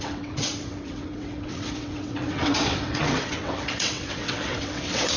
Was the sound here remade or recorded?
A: remade